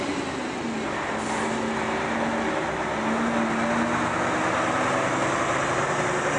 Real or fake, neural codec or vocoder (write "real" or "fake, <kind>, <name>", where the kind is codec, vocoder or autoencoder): real